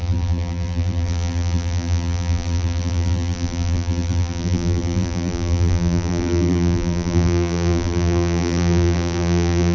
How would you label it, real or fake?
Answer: fake